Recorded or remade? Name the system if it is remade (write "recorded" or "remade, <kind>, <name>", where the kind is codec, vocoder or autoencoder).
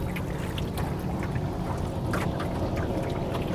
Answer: recorded